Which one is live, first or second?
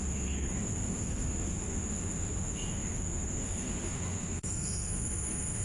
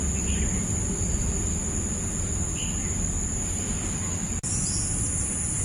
second